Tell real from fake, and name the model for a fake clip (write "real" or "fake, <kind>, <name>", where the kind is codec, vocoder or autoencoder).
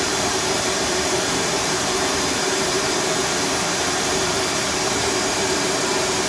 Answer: fake, vocoder, BigVGAN v2